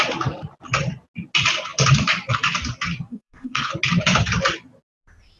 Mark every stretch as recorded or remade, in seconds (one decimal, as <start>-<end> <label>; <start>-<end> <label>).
0.0-3.1 recorded; 3.1-3.7 remade; 3.7-5.4 recorded